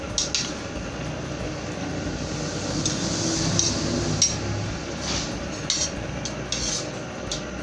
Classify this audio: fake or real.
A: real